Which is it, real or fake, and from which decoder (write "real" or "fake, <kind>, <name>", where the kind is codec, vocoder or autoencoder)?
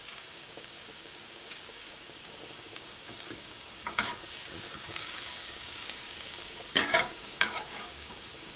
fake, codec, DAC